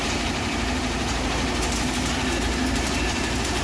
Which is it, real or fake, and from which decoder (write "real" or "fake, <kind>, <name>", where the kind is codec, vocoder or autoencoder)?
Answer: fake, vocoder, BigVGAN v2